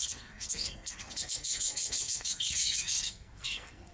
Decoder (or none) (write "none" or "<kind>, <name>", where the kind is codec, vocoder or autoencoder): codec, SNAC